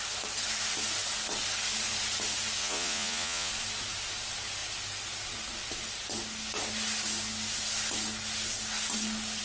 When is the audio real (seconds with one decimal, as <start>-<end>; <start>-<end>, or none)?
0.0-2.6; 3.5-9.4